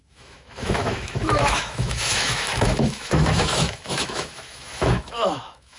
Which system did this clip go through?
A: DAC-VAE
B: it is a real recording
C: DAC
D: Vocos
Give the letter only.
A